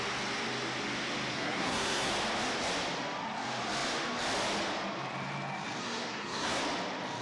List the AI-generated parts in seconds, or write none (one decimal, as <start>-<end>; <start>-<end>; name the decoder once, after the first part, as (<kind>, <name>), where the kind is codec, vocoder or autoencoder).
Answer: 1.3-2.1 (codec, SNAC); 5.8-6.6